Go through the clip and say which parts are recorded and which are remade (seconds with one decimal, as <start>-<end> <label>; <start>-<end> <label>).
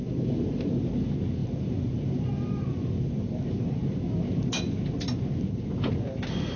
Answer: 0.0-6.6 recorded